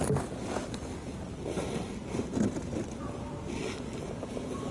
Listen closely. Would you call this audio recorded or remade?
recorded